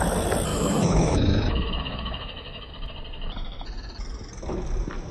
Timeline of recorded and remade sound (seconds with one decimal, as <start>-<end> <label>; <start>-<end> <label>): 0.0-0.5 recorded; 0.5-2.7 remade; 2.7-5.1 recorded